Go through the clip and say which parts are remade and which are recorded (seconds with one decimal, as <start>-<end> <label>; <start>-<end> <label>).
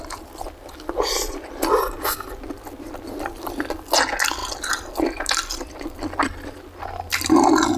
0.0-7.8 recorded